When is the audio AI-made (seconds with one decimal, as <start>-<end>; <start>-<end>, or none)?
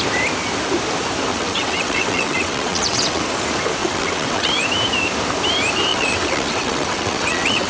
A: 1.3-3.2; 3.8-4.5; 5.9-7.7